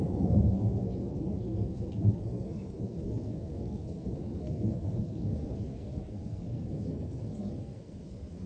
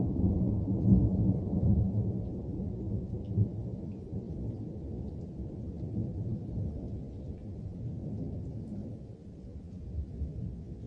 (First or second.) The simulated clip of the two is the first